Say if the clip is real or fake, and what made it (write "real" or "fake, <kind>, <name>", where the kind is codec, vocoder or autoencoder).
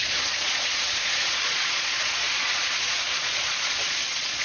fake, vocoder, Vocos